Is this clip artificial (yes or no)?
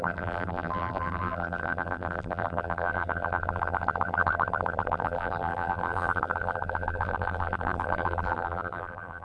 yes